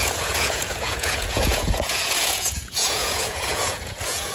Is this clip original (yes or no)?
no